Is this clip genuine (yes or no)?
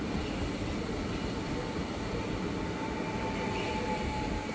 yes